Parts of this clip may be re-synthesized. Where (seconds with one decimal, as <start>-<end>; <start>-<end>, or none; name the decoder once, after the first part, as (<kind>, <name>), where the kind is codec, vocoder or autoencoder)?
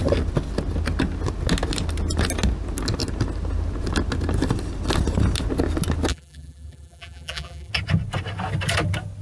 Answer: 6.1-7.7 (vocoder, BigVGAN v2)